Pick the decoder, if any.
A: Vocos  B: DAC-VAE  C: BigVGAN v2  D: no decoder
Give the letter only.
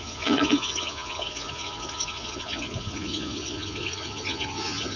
A